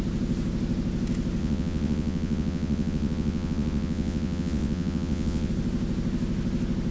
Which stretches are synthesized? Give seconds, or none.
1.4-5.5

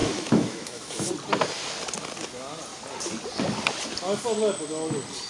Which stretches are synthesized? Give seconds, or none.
0.0-1.1

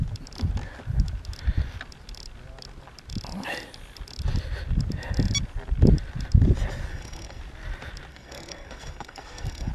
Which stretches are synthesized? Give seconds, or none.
6.9-7.4; 8.1-9.7